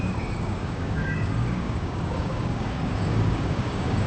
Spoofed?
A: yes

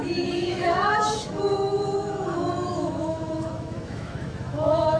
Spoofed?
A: yes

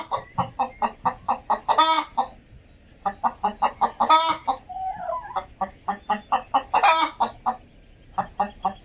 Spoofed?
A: no